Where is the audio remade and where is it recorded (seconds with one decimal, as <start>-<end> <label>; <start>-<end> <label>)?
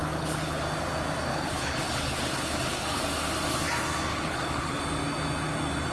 0.0-0.6 remade; 0.6-1.3 recorded; 1.3-3.0 remade; 3.0-4.1 recorded; 4.1-4.8 remade; 4.8-5.9 recorded